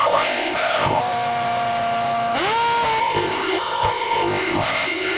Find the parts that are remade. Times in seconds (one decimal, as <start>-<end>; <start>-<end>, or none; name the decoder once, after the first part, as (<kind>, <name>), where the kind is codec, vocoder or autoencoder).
0.0-1.0 (codec, ZipCodec); 3.0-5.2